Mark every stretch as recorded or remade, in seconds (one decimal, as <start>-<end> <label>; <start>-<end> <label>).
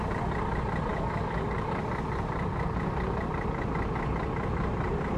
0.0-0.9 recorded; 0.9-1.8 remade; 1.8-5.2 recorded